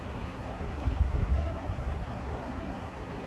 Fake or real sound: fake